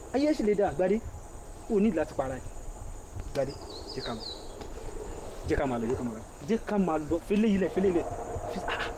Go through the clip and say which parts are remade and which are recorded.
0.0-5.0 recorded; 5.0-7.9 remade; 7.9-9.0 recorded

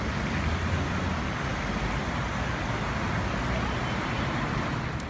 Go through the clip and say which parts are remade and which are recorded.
0.0-5.1 recorded

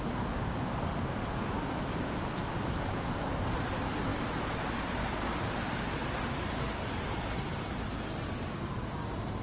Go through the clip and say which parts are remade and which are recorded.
0.0-9.4 recorded

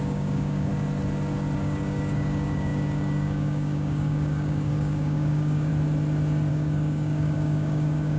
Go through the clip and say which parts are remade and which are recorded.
0.0-0.7 remade; 0.7-1.6 recorded; 1.6-5.7 remade; 5.7-6.5 recorded; 6.5-8.2 remade

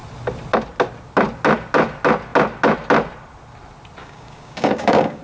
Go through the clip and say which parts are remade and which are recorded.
0.0-4.0 recorded; 4.0-5.2 remade

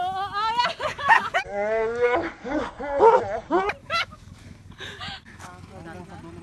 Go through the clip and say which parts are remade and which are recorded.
0.0-0.9 recorded; 0.9-2.7 remade; 2.7-3.8 recorded; 3.8-5.7 remade; 5.7-6.4 recorded